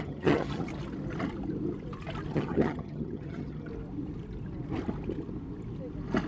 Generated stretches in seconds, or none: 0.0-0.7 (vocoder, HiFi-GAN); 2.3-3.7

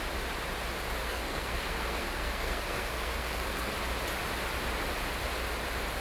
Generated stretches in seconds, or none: 1.0-3.7 (codec, SNAC)

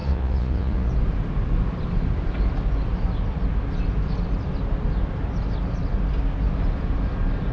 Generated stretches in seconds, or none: 0.0-0.9 (vocoder, Vocos)

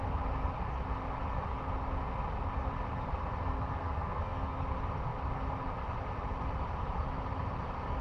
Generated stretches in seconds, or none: 3.5-4.6 (codec, SNAC)

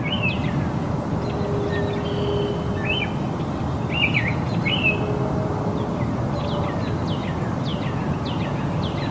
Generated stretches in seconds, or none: 7.7-8.7 (vocoder, Vocos)

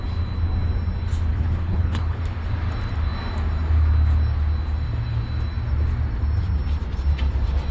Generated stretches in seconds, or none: 1.3-2.2 (codec, HILCodec)